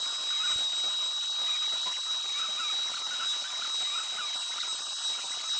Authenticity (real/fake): real